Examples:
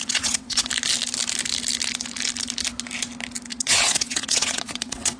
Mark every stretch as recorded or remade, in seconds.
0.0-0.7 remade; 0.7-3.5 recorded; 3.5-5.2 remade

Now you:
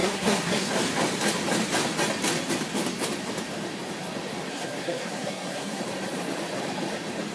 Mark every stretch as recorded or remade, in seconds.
0.0-0.7 remade; 0.7-4.5 recorded; 4.5-5.8 remade; 5.8-7.3 recorded

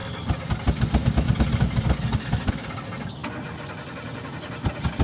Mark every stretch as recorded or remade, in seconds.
0.0-5.0 recorded

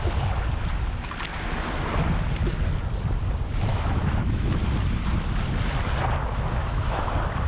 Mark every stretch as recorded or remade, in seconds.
0.0-3.7 recorded; 3.7-4.6 remade; 4.6-6.6 recorded; 6.6-7.1 remade; 7.1-7.5 recorded

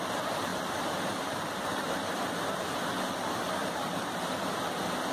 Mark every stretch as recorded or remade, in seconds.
0.0-0.5 recorded; 0.5-1.9 remade; 1.9-3.6 recorded; 3.6-4.3 remade; 4.3-5.1 recorded

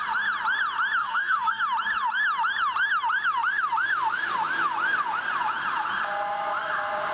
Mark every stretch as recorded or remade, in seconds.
0.0-1.0 recorded; 1.0-1.6 remade; 1.6-7.1 recorded

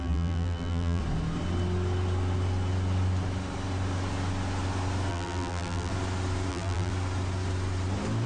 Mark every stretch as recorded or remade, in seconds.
0.0-1.0 remade; 1.0-5.1 recorded; 5.1-5.9 remade; 5.9-6.5 recorded; 6.5-6.9 remade; 6.9-8.3 recorded